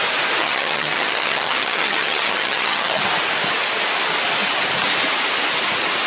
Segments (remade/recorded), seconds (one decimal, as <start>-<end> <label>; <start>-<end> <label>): 0.0-0.4 recorded; 0.4-3.0 remade; 3.0-6.1 recorded

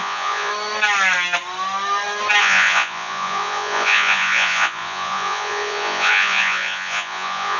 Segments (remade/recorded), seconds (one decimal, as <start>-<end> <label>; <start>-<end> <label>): 0.0-0.5 remade; 0.5-2.4 recorded; 2.4-7.6 remade